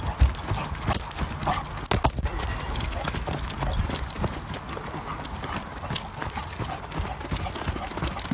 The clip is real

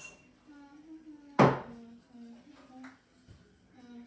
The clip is real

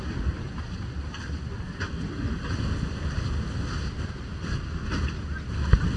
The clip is fake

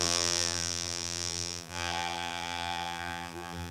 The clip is fake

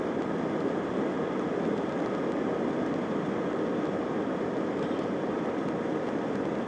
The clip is fake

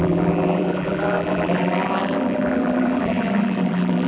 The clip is fake